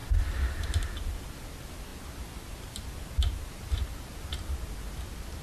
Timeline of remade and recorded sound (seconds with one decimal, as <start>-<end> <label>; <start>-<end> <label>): 0.0-5.4 recorded